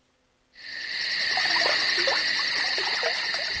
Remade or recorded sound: recorded